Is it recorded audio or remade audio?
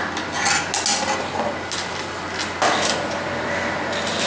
recorded